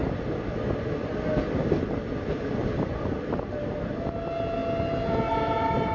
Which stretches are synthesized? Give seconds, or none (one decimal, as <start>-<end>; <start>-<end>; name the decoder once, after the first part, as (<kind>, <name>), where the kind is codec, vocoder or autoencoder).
none